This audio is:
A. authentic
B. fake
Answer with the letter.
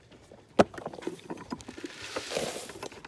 A